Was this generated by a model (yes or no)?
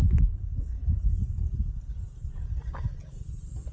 no